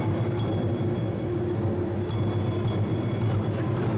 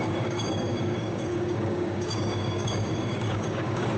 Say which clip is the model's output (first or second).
second